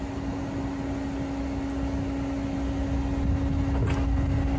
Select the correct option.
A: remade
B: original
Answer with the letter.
B